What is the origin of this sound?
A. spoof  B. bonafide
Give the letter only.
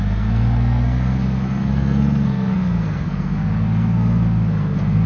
A